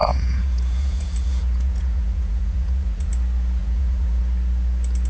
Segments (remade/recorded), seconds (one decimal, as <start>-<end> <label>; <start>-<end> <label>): 0.0-3.1 remade; 3.1-3.6 recorded; 3.6-4.2 remade; 4.2-5.1 recorded